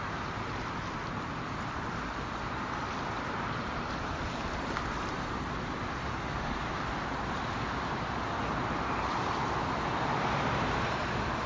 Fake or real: fake